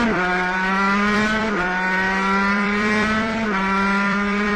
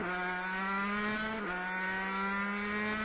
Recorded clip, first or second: second